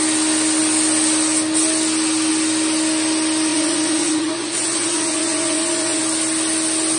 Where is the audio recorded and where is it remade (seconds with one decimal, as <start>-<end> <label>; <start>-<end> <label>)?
0.0-3.5 recorded; 3.5-6.0 remade; 6.0-7.0 recorded